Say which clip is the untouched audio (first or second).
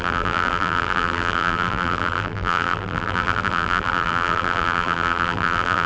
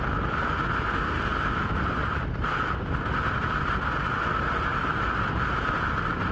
second